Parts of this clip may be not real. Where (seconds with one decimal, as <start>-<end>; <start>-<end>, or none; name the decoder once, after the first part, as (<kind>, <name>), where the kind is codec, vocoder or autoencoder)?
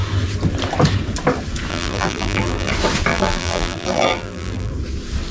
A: 1.7-2.7 (vocoder, BigVGAN v2); 3.1-4.7